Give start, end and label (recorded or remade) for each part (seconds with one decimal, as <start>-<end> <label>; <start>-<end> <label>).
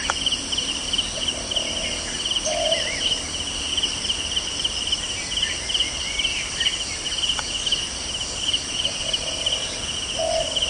0.0-6.7 remade; 6.7-7.6 recorded; 7.6-10.7 remade